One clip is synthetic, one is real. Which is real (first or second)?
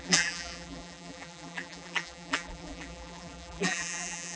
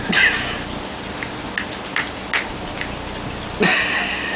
second